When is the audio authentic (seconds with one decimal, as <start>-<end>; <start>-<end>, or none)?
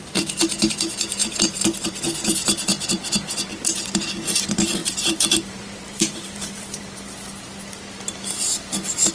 0.0-1.2; 3.3-4.8; 6.8-9.1